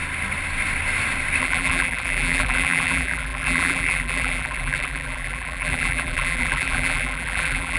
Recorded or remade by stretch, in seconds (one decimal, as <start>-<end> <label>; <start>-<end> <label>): 0.0-1.4 recorded; 1.4-7.8 remade